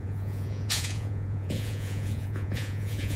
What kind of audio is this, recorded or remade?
remade